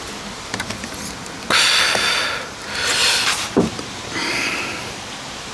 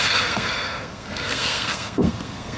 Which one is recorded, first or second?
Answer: first